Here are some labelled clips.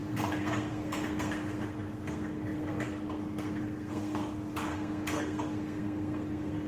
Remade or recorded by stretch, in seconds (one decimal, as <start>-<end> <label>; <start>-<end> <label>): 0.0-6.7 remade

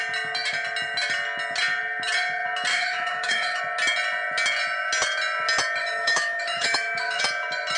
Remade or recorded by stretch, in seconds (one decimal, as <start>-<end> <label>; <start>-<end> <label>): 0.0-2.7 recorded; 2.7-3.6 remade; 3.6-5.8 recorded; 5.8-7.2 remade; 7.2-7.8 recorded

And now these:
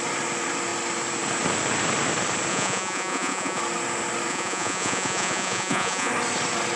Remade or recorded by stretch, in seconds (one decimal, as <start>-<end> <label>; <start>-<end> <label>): 0.0-2.5 recorded; 2.5-3.6 remade; 3.6-4.3 recorded; 4.3-6.1 remade; 6.1-6.8 recorded

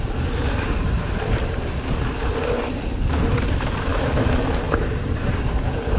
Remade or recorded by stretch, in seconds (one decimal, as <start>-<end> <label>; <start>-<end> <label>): 0.0-3.9 recorded; 3.9-4.6 remade; 4.6-6.0 recorded

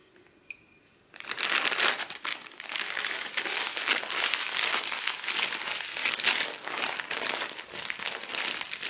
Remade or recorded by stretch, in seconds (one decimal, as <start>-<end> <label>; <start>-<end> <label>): 0.0-2.3 recorded; 2.3-4.7 remade; 4.7-6.0 recorded; 6.0-7.6 remade; 7.6-8.9 recorded

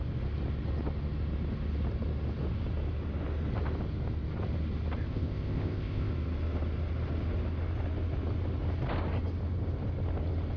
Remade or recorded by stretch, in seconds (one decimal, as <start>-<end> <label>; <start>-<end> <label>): 0.0-5.1 recorded; 5.1-6.1 remade; 6.1-10.6 recorded